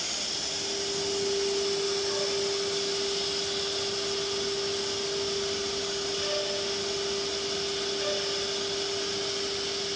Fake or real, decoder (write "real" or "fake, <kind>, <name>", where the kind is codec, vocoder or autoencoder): real